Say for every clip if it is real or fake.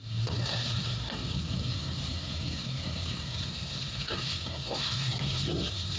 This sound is fake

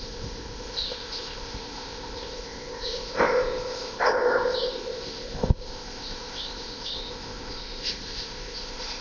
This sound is fake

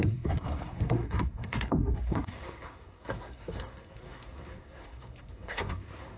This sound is fake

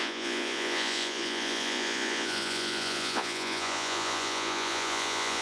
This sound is fake